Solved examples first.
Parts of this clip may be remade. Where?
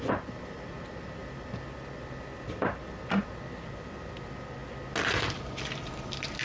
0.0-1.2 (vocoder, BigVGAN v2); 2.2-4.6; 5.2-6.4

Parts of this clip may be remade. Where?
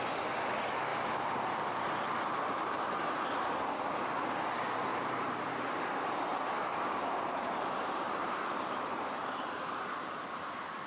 0.9-2.1 (vocoder, BigVGAN v2); 4.9-5.5; 6.3-10.4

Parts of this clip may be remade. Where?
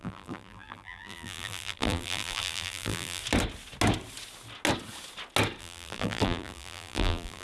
0.0-3.2 (vocoder, BigVGAN v2); 5.6-7.4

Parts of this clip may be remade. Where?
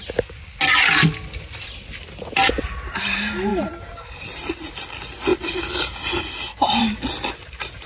3.5-4.7 (vocoder, BigVGAN v2)